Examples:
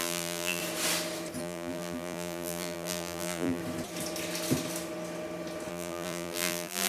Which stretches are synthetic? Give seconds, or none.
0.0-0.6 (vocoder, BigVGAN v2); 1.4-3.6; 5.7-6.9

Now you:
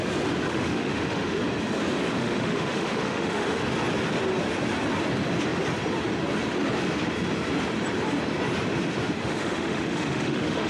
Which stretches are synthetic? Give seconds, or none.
0.5-1.4 (autoencoder, DAC-VAE); 2.2-3.7; 9.2-10.7

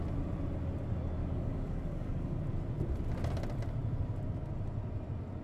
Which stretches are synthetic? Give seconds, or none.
1.2-2.4 (codec, DAC)

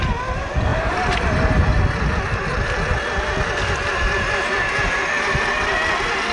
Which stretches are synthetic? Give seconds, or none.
0.7-1.8 (vocoder, BigVGAN v2)

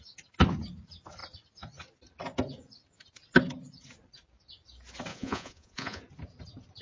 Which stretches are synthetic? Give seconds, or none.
5.1-6.0 (vocoder, Vocos)

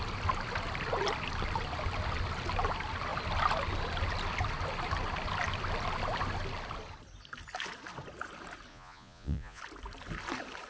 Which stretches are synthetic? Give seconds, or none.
8.7-9.6 (vocoder, Vocos)

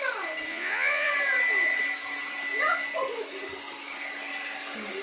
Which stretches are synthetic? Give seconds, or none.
0.5-1.1 (vocoder, Vocos)